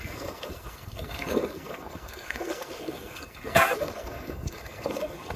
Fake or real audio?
fake